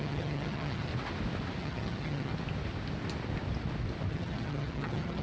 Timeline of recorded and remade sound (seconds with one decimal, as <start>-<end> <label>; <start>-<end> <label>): 0.0-0.9 remade; 0.9-1.6 recorded; 1.6-2.3 remade; 2.3-4.1 recorded; 4.1-5.2 remade